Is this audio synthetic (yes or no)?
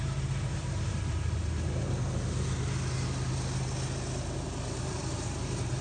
no